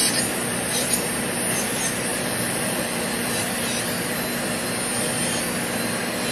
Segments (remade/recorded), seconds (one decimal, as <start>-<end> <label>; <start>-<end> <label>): 0.0-0.9 remade; 0.9-2.1 recorded; 2.1-3.5 remade; 3.5-6.3 recorded